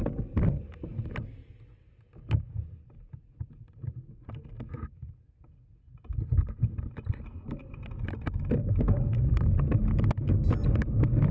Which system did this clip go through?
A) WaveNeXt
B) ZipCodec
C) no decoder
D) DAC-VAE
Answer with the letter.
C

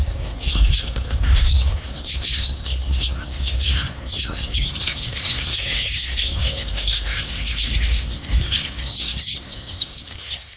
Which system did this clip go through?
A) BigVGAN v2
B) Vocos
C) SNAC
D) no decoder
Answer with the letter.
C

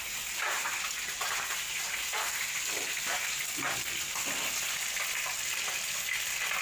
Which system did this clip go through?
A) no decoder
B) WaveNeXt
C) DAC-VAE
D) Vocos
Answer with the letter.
A